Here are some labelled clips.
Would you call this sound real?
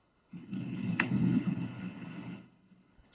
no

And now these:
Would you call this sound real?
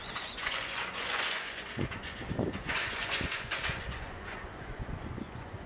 no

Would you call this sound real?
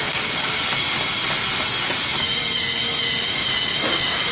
yes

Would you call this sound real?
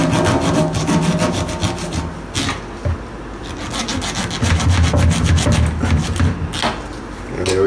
yes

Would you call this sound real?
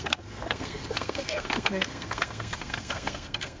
no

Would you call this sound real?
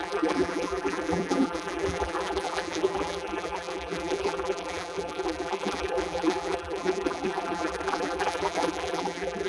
no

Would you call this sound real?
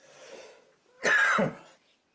yes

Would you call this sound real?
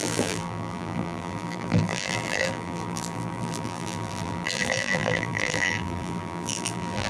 no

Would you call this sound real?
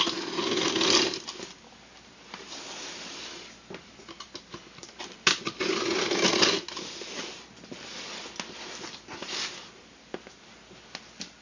yes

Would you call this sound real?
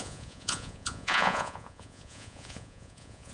no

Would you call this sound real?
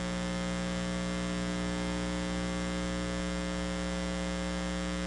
yes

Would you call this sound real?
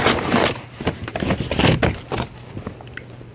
yes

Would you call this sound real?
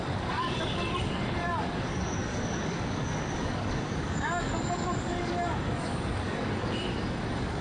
no